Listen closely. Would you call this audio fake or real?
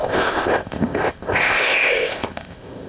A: fake